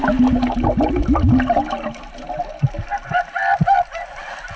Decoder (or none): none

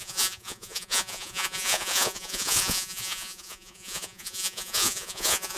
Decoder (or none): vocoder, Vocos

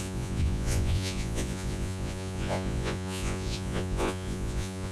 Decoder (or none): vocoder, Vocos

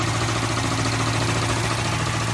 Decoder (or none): none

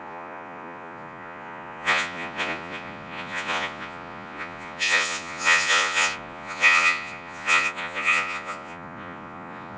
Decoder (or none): vocoder, Vocos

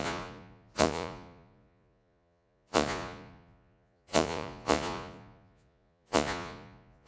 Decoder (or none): vocoder, Vocos